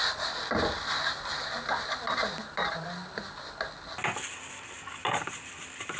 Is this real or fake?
real